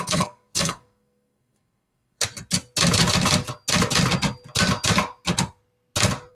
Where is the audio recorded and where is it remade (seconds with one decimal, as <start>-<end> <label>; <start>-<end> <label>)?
0.0-2.2 remade; 2.2-6.3 recorded